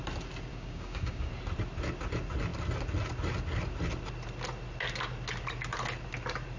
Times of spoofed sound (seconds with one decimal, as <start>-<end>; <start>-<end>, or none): 0.5-1.3